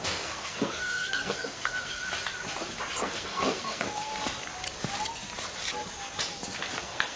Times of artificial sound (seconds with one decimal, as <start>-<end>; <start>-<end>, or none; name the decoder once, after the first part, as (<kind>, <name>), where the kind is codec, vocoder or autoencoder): 0.0-2.0 (codec, SNAC); 3.0-4.1; 6.8-7.2